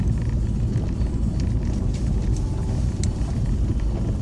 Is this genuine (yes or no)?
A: yes